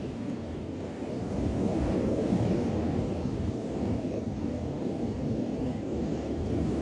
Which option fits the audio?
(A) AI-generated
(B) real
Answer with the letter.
A